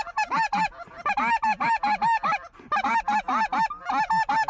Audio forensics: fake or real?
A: real